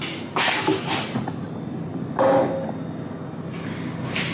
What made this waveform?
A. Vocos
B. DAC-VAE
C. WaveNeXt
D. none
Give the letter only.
D